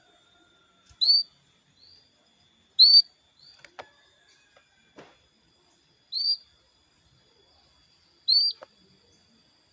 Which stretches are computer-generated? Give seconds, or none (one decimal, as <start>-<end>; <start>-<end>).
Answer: none